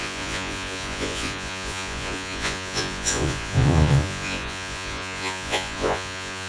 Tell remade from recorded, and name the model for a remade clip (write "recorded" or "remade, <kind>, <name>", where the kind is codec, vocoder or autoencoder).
remade, vocoder, Vocos